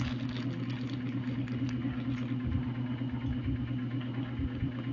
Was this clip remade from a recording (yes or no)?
no